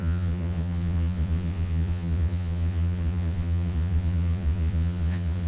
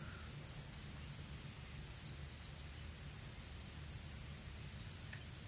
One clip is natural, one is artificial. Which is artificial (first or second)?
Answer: first